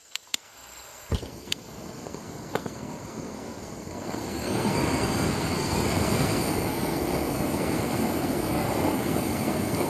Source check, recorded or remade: remade